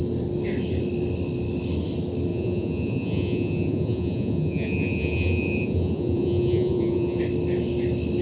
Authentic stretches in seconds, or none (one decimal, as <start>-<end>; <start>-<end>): 0.0-2.3; 7.2-8.2